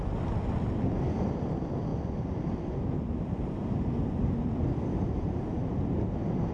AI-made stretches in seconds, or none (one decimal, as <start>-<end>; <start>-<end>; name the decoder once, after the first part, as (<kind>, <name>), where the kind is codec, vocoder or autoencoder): none